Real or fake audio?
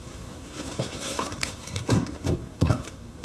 fake